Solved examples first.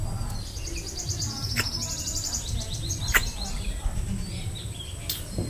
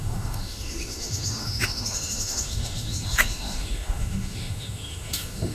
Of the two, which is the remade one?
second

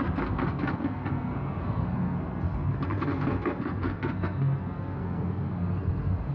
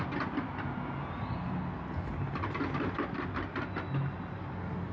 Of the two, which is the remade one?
first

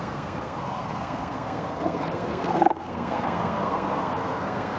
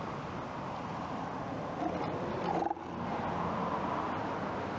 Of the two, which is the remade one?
first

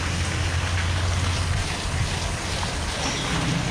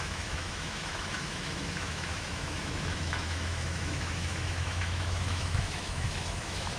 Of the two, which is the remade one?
second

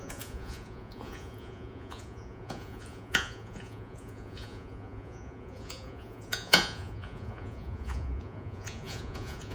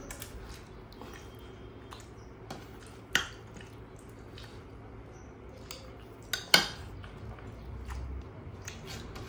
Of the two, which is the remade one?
first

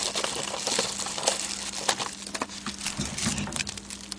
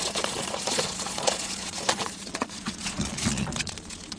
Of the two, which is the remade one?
second